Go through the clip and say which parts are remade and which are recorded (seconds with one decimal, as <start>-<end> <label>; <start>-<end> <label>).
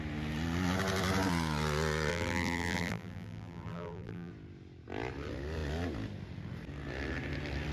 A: 0.0-2.1 recorded; 2.1-4.3 remade; 4.3-7.7 recorded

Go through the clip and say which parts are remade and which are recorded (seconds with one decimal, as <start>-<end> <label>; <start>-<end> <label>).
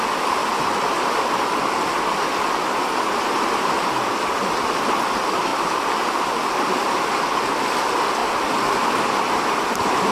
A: 0.0-10.1 recorded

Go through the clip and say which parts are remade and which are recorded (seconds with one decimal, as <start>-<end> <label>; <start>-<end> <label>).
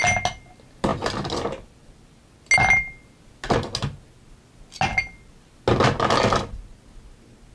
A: 0.0-0.9 recorded; 0.9-2.2 remade; 2.2-7.5 recorded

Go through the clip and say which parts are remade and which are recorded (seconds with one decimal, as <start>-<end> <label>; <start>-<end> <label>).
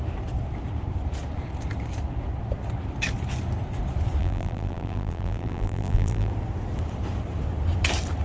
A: 0.0-4.2 recorded; 4.2-6.3 remade; 6.3-8.2 recorded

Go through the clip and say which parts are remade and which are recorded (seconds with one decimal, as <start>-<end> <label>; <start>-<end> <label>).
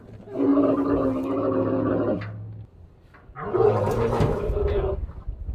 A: 0.0-3.6 recorded; 3.6-4.5 remade; 4.5-5.5 recorded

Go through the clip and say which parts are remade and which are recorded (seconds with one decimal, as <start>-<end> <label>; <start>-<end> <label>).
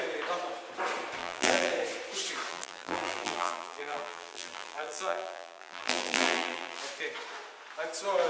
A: 0.0-1.2 recorded; 1.2-1.7 remade; 1.7-2.5 recorded; 2.5-6.8 remade; 6.8-8.3 recorded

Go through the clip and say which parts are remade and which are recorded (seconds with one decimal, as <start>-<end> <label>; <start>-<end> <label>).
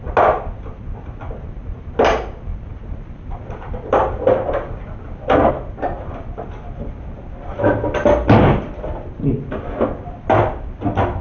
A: 0.0-2.5 recorded; 2.5-5.5 remade; 5.5-11.2 recorded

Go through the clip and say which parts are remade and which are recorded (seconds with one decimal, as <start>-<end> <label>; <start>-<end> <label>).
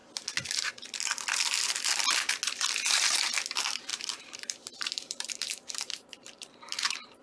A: 0.0-3.9 recorded; 3.9-7.2 remade